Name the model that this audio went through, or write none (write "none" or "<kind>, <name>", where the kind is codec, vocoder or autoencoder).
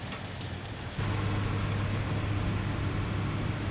none